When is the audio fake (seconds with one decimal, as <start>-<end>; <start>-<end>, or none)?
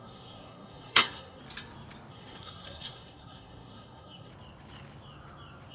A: 0.0-1.4; 2.1-4.3